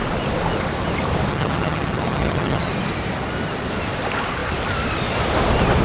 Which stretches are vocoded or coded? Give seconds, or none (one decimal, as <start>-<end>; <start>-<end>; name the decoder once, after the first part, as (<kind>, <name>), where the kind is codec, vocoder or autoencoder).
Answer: 1.3-2.7 (vocoder, HiFi-GAN)